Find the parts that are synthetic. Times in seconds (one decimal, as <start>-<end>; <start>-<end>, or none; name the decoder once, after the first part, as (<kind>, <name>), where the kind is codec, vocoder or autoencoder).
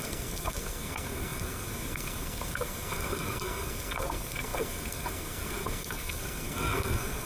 0.0-7.3 (codec, SNAC)